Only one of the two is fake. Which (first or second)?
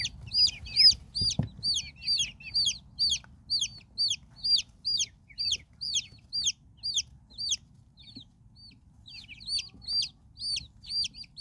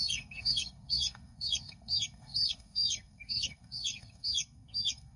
second